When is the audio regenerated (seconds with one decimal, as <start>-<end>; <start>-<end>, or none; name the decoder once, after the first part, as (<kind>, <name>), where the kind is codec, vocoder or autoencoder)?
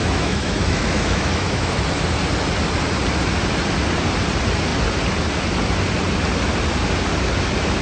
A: 0.0-1.8 (autoencoder, DAC-VAE)